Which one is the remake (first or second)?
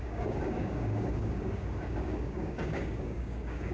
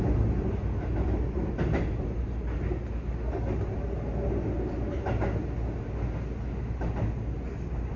first